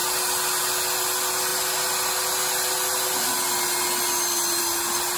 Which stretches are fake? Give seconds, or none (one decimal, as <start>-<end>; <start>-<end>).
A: none